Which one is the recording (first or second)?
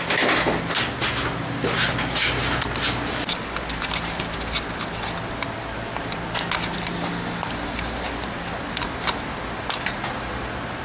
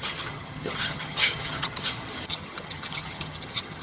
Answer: first